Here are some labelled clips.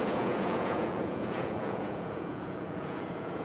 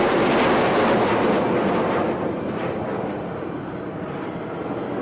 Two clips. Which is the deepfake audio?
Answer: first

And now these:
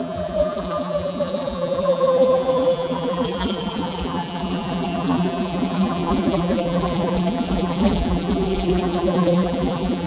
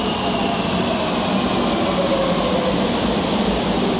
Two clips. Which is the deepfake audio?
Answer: first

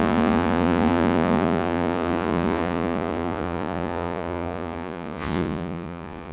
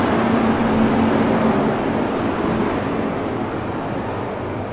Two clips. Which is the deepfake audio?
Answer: first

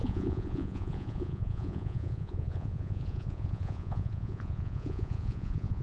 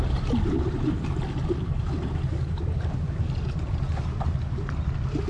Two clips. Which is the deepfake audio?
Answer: first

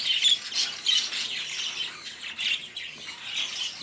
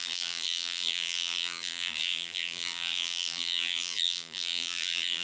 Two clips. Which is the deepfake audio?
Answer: second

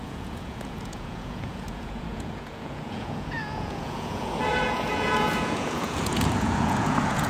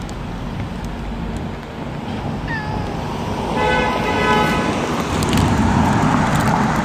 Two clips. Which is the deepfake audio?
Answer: first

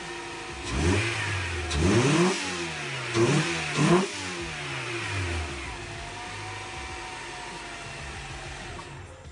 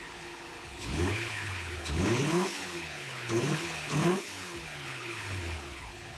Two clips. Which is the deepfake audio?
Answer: second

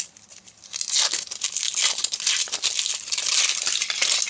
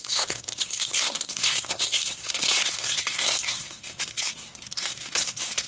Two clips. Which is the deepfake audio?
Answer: second